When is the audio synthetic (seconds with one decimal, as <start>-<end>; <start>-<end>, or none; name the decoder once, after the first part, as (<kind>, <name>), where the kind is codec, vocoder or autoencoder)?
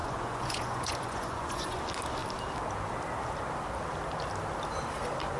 0.0-1.8 (vocoder, Vocos)